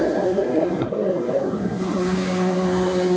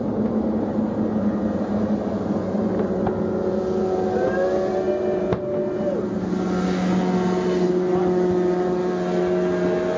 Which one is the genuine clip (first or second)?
second